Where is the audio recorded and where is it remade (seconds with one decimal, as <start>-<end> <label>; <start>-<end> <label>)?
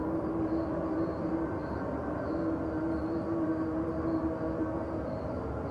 0.0-1.6 recorded; 1.6-2.3 remade; 2.3-3.0 recorded; 3.0-3.5 remade; 3.5-5.7 recorded